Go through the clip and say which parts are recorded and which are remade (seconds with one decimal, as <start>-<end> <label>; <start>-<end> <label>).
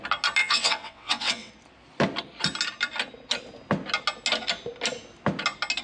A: 0.0-0.4 recorded; 0.4-1.5 remade; 1.5-5.8 recorded